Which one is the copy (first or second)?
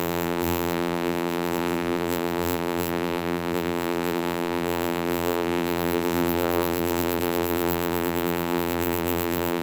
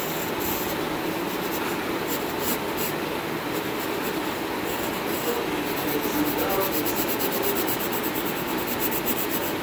first